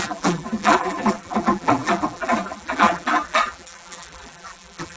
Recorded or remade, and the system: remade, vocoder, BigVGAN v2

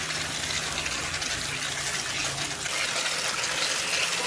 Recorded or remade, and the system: recorded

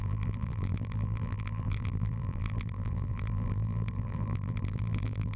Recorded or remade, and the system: remade, vocoder, BigVGAN v2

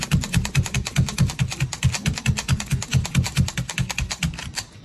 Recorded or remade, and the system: recorded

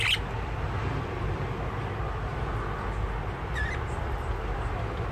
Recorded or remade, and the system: recorded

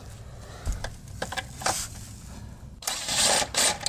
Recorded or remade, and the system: recorded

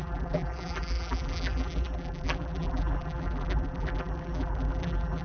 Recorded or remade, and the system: remade, vocoder, BigVGAN v2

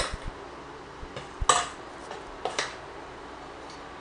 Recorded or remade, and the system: recorded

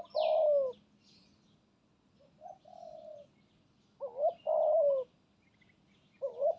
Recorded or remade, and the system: recorded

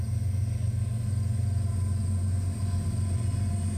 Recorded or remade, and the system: recorded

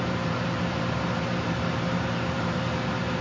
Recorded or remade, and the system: remade, vocoder, BigVGAN v2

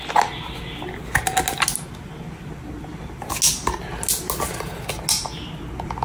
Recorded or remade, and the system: recorded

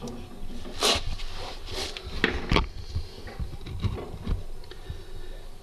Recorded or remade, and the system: recorded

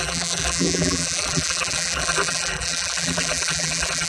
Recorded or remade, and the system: remade, vocoder, BigVGAN v2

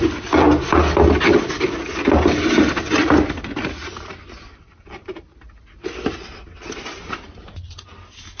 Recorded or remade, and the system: recorded